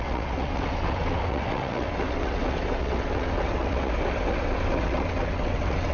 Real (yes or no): no